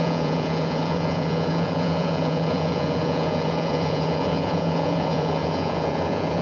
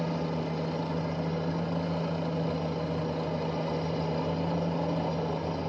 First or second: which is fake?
first